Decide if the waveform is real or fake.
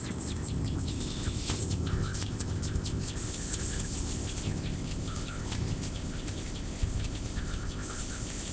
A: fake